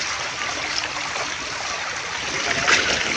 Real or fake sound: real